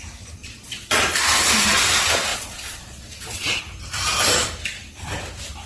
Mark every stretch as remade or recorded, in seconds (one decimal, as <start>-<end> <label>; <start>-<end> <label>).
0.0-0.4 recorded; 0.4-1.0 remade; 1.0-2.3 recorded; 2.3-3.6 remade; 3.6-5.7 recorded